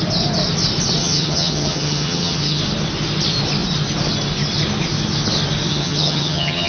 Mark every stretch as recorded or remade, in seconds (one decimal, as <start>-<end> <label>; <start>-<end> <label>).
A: 0.0-1.0 recorded; 1.0-2.6 remade; 2.6-5.7 recorded; 5.7-6.7 remade